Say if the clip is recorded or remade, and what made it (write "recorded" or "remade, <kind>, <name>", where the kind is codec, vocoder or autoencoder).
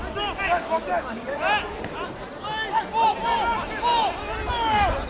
recorded